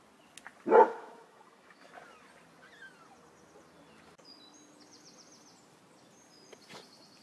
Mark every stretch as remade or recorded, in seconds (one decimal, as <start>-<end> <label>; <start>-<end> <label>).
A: 0.0-0.9 recorded; 0.9-1.9 remade; 1.9-7.2 recorded